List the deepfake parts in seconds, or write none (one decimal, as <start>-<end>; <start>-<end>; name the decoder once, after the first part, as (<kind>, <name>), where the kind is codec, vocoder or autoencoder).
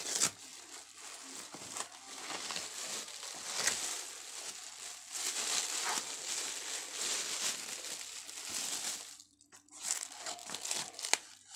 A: none